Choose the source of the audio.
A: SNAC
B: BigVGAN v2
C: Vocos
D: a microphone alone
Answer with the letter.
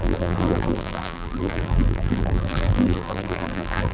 B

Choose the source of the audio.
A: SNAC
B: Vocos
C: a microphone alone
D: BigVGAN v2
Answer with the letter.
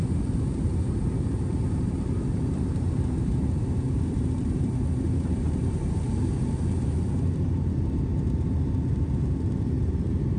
D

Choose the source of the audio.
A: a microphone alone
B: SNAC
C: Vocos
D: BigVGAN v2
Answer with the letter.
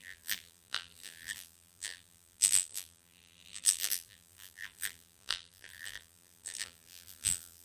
D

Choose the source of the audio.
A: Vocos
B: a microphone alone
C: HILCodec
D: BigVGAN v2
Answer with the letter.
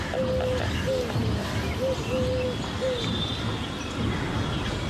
B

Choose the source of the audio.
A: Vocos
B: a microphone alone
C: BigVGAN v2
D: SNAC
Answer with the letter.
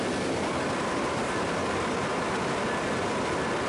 C